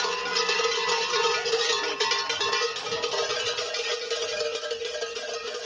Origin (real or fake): real